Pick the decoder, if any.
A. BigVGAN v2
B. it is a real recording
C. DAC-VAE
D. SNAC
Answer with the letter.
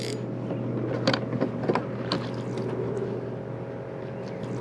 B